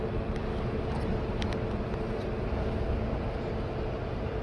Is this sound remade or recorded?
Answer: recorded